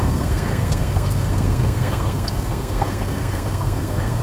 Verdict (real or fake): fake